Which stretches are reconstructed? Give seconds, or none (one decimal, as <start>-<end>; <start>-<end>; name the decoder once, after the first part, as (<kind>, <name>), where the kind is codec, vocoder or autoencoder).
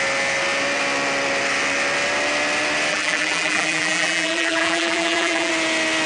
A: 2.9-5.5 (vocoder, BigVGAN v2)